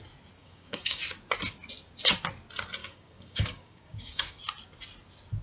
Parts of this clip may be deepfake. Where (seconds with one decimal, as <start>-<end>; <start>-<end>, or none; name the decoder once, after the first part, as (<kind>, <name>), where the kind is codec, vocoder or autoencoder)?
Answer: 0.4-1.0 (codec, DAC); 2.8-4.4